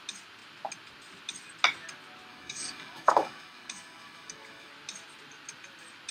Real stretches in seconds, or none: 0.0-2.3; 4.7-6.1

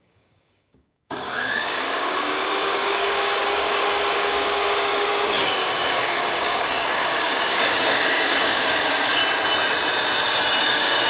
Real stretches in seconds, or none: 9.2-10.6

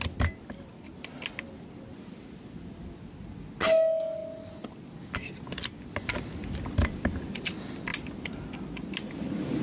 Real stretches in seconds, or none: 0.0-9.6

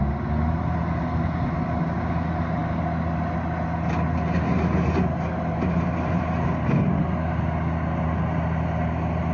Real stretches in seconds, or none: 0.0-9.3

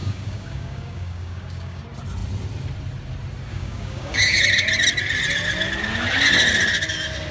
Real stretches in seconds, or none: 1.8-3.5; 4.4-7.3

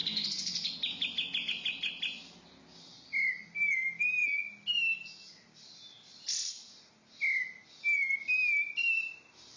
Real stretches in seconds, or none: 0.0-9.6

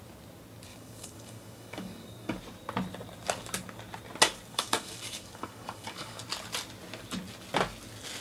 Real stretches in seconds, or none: 0.0-0.7; 2.4-4.5; 6.2-8.2

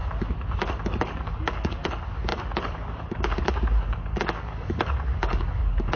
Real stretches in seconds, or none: 0.0-1.0